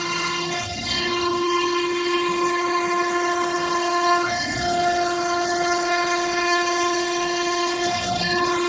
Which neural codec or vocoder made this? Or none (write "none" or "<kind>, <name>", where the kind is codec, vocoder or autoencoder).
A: codec, HILCodec